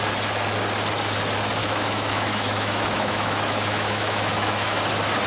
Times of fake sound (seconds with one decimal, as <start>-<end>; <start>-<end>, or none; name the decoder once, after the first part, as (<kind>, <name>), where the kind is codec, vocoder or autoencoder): 1.6-4.8 (autoencoder, DAC-VAE)